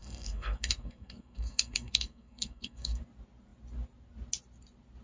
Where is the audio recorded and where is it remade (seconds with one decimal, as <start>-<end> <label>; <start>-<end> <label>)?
0.0-3.0 remade; 3.0-5.0 recorded